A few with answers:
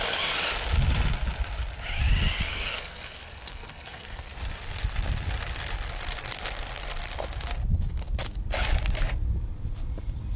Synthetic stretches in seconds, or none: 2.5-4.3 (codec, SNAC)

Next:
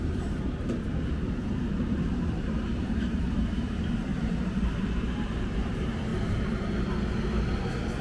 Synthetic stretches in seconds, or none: 0.0-6.1 (vocoder, BigVGAN v2)

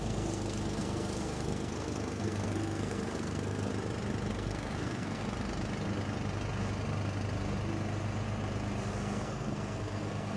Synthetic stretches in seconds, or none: 0.0-3.7 (codec, SNAC); 4.3-5.2; 8.9-10.4

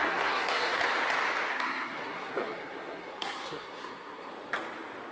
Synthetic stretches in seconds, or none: 0.0-0.8 (codec, SNAC); 1.5-4.3